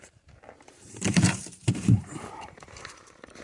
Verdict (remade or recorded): remade